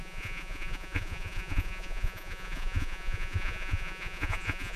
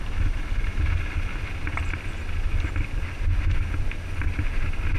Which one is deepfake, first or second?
first